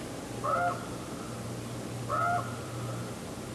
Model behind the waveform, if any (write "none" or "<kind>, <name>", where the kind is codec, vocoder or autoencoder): none